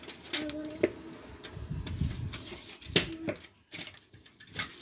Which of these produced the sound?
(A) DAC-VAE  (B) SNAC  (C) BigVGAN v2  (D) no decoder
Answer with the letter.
D